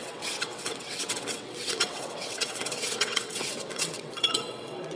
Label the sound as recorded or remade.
remade